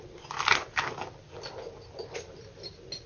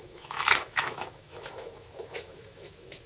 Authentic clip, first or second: first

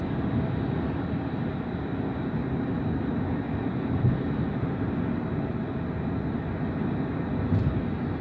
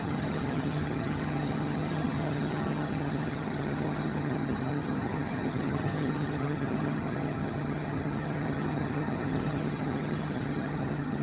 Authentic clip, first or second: first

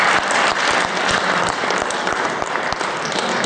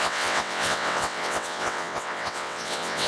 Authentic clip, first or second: first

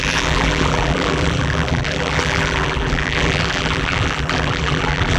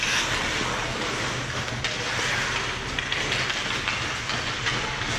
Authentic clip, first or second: second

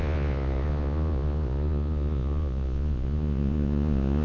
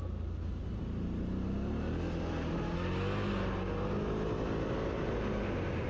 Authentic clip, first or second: second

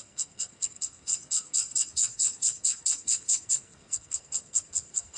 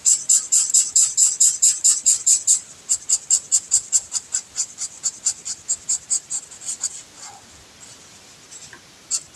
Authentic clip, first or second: second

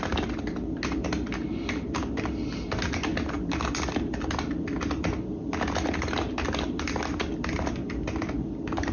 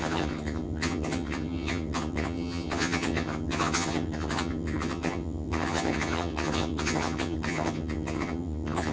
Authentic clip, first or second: first